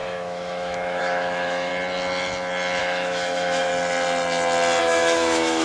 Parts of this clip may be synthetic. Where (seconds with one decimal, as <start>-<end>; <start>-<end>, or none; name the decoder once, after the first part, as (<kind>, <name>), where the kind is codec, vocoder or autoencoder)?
0.0-1.7 (autoencoder, DAC-VAE); 2.8-3.7; 4.8-5.6